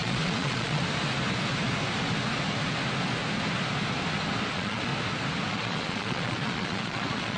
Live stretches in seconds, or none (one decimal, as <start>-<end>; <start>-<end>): 0.8-4.5; 4.9-5.5